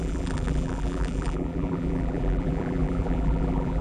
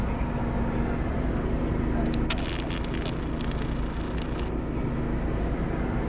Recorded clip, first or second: second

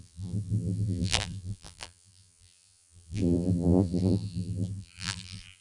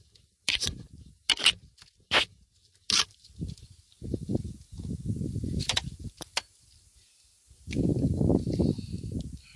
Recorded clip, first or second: second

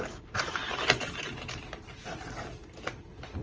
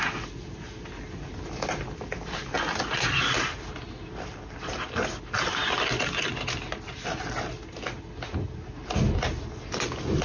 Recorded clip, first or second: second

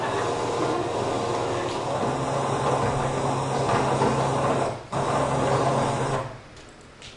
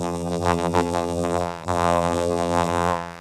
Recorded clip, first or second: first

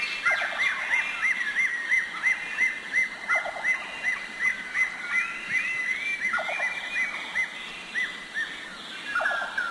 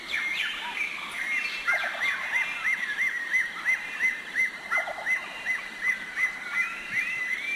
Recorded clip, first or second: first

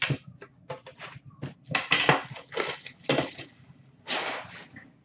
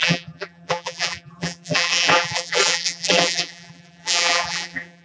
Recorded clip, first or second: first